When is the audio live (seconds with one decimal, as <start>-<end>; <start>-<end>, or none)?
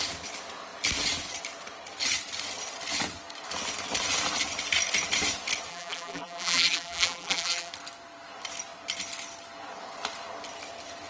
0.0-5.7; 7.7-11.1